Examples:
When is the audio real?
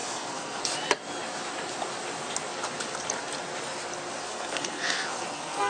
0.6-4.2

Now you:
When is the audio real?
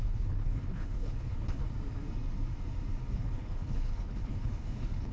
1.6-3.0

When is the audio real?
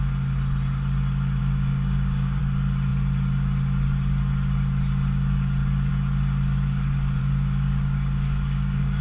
0.0-1.4; 2.4-7.2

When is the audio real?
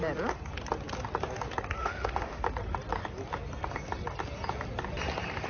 0.0-1.8; 2.4-5.5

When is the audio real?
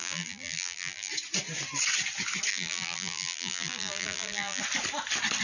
1.1-2.5; 4.6-5.4